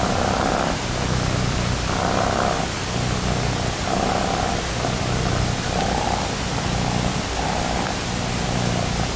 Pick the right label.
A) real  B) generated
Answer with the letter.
A